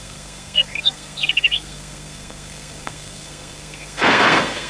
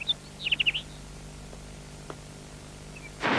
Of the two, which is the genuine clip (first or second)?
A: second